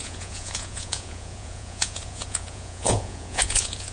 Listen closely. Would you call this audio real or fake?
fake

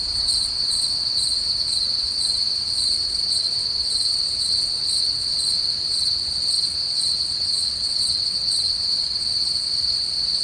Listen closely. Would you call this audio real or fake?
fake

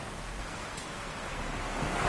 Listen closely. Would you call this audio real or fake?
fake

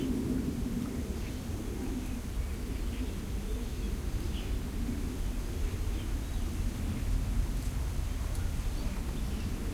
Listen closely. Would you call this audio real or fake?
real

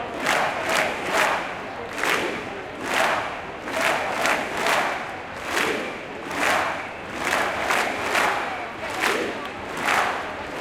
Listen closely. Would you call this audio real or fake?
real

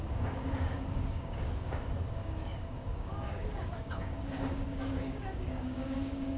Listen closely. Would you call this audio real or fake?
fake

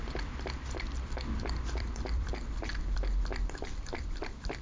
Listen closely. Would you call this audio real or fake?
fake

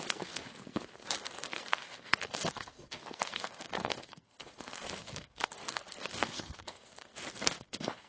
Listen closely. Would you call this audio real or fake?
fake